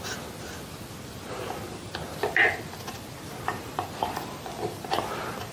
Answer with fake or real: real